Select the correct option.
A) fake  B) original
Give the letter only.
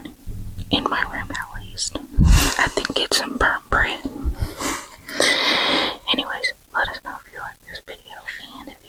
B